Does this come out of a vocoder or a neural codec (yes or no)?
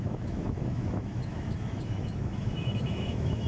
yes